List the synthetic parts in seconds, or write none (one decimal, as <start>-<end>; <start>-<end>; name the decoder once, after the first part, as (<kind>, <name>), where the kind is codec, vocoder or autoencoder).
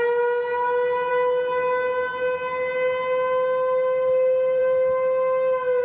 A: none